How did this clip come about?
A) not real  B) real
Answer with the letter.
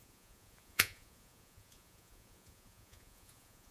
A